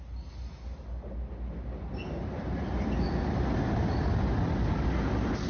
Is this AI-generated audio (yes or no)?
no